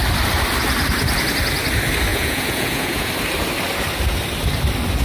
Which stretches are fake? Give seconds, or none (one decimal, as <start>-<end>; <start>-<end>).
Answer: 2.1-3.1

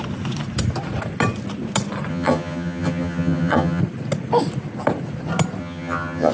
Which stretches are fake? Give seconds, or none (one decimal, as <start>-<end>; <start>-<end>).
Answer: 2.1-3.8; 5.6-6.3